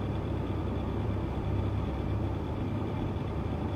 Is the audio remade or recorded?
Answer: remade